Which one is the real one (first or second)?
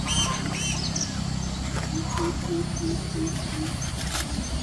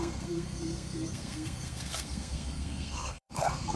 first